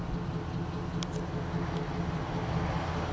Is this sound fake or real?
real